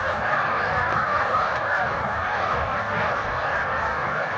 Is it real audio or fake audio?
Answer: fake